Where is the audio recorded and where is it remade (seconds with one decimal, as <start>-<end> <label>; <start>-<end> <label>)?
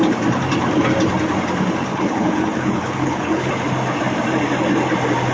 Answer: 0.0-1.9 recorded; 1.9-3.5 remade; 3.5-5.3 recorded